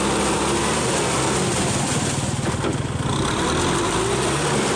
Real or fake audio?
real